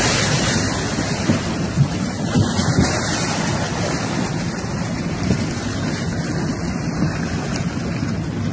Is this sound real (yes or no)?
yes